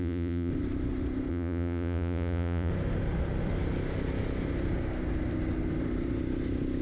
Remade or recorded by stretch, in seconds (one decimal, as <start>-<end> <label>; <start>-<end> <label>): 0.0-0.5 remade; 0.5-1.3 recorded; 1.3-2.7 remade; 2.7-6.8 recorded